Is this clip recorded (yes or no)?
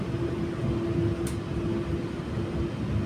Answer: yes